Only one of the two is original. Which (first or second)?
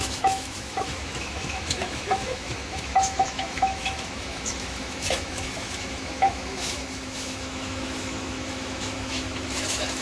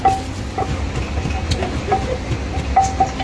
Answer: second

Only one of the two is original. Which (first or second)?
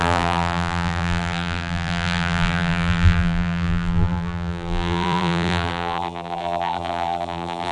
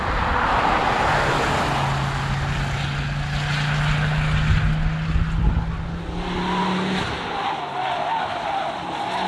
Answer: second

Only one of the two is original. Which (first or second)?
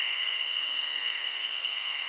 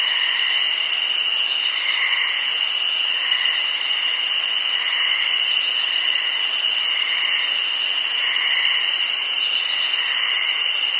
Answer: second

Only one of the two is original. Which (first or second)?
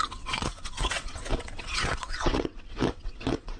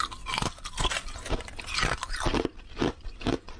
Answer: second